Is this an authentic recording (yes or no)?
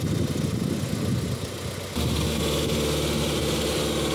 yes